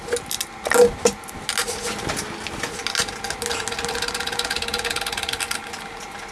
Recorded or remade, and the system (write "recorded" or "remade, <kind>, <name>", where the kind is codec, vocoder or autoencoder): recorded